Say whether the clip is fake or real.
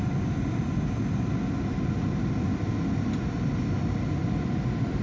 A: real